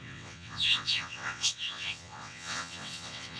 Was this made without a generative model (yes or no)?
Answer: no